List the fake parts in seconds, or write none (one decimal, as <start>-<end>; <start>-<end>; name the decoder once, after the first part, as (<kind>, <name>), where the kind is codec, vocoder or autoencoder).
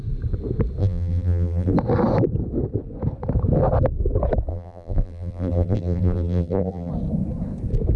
0.8-1.7 (vocoder, BigVGAN v2); 4.5-6.9